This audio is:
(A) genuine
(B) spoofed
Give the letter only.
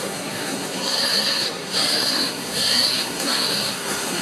B